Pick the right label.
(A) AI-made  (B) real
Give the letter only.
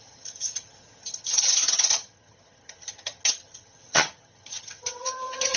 A